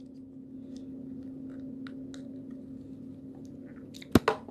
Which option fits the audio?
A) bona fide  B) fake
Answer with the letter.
A